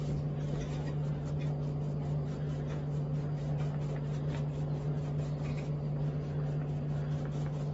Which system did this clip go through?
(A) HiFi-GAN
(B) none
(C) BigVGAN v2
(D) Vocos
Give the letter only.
B